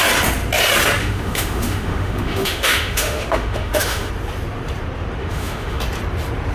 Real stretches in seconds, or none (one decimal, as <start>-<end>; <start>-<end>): 0.0-1.0; 4.1-5.2; 5.8-6.5